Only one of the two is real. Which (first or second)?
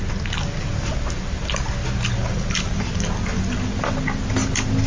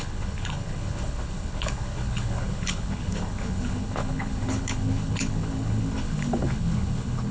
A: first